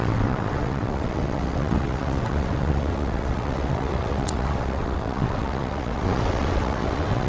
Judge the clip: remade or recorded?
remade